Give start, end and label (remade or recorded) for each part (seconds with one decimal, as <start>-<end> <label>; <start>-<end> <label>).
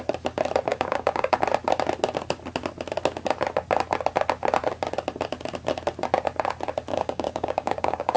0.0-0.7 recorded; 0.7-1.4 remade; 1.4-6.9 recorded; 6.9-8.2 remade